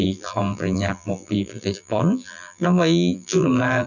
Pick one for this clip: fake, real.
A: fake